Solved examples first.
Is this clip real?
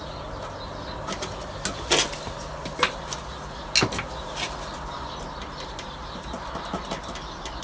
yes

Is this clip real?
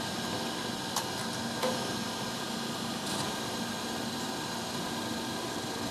yes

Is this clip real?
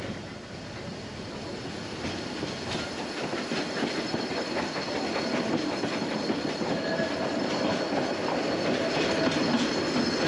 yes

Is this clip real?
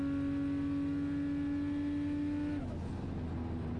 yes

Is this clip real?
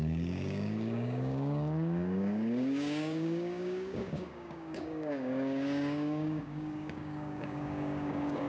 no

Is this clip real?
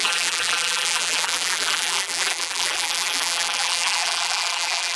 no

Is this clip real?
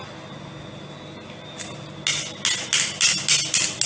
yes